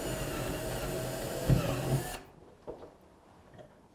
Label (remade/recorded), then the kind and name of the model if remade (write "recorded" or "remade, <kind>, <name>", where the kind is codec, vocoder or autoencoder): remade, vocoder, BigVGAN v2